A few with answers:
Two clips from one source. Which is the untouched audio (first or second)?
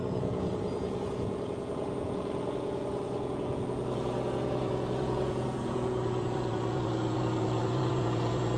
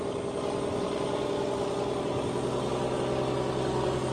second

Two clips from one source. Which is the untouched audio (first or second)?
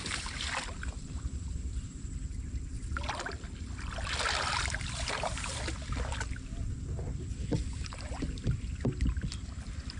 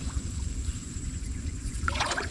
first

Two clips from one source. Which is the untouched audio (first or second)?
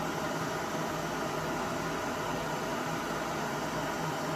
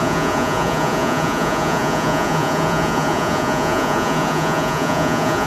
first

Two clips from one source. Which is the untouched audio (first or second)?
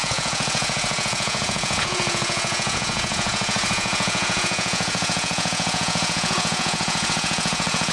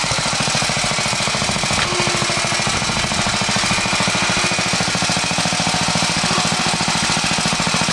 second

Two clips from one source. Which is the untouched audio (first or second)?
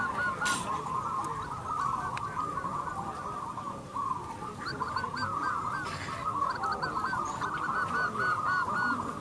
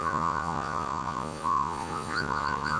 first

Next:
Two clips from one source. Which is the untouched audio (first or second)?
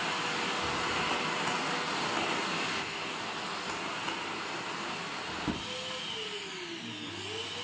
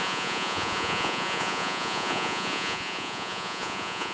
first